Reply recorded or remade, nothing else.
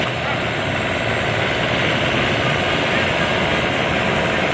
recorded